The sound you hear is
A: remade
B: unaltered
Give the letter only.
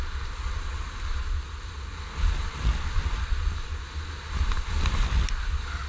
B